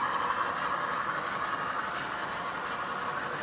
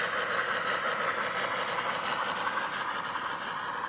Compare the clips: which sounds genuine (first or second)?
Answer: first